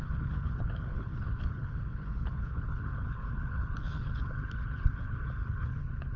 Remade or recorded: remade